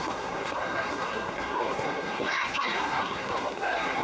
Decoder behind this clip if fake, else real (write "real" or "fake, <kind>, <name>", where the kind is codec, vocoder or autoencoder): fake, codec, SNAC